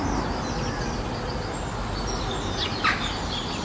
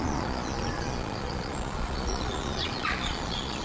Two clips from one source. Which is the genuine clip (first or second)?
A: first